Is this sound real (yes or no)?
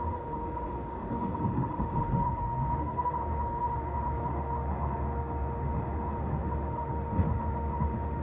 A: no